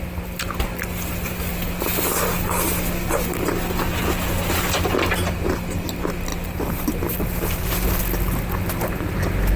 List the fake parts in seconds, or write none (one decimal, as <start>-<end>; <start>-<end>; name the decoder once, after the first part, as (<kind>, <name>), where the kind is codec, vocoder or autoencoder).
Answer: 6.3-7.1 (vocoder, BigVGAN v2)